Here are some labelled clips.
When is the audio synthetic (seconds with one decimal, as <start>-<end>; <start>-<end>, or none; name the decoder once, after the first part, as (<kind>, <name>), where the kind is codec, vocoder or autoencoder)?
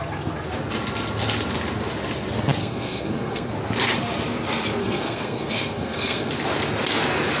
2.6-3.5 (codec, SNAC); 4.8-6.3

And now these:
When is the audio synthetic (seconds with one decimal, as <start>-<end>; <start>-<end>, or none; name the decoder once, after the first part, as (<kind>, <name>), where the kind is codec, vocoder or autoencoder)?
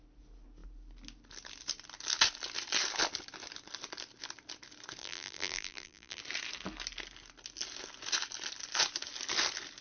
5.0-6.2 (vocoder, BigVGAN v2)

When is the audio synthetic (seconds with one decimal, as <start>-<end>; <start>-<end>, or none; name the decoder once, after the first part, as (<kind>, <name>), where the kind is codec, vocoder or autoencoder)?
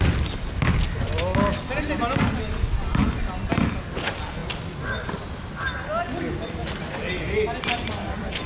none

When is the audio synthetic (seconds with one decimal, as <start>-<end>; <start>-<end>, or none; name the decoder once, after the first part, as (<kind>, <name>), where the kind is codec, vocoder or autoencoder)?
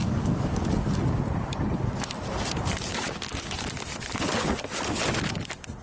0.0-1.2 (codec, DAC)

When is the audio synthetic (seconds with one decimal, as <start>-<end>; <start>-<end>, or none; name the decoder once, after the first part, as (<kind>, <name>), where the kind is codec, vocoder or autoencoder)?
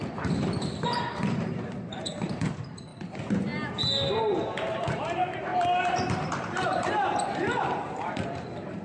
0.0-2.9 (vocoder, BigVGAN v2); 4.1-8.8